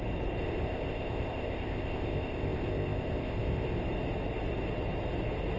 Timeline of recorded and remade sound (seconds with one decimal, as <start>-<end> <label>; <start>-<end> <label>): 0.0-0.4 recorded; 0.4-3.8 remade; 3.8-5.6 recorded